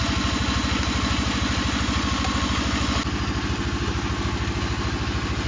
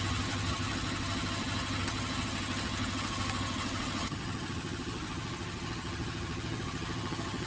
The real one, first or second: first